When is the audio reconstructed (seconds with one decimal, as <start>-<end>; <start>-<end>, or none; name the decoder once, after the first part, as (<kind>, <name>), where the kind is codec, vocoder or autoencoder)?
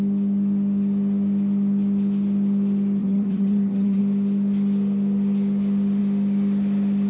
3.0-4.0 (vocoder, HiFi-GAN)